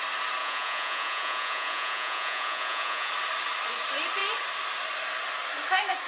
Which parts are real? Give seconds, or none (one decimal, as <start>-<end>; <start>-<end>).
0.0-0.4; 3.1-6.1